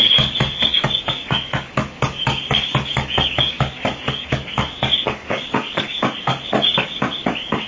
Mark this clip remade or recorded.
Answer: remade